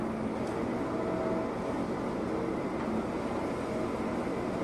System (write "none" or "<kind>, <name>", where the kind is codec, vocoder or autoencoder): none